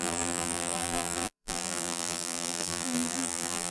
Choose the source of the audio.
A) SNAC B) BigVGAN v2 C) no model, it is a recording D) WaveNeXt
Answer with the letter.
B